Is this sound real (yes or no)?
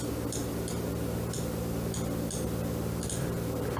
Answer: yes